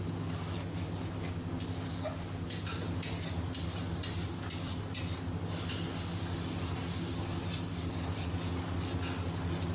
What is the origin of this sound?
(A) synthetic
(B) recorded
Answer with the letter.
B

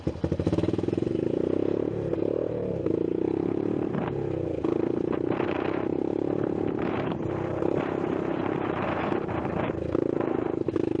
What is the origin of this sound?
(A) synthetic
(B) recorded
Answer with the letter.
A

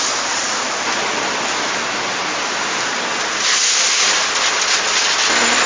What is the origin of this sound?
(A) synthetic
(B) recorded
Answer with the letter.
B